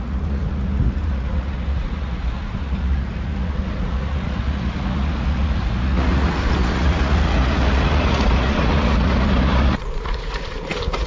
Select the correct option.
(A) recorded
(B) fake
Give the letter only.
B